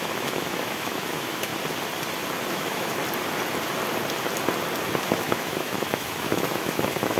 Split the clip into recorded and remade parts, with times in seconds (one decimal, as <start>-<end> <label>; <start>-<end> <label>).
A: 0.0-1.5 remade; 1.5-2.5 recorded; 2.5-3.0 remade; 3.0-5.0 recorded; 5.0-7.2 remade